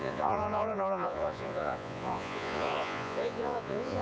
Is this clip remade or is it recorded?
remade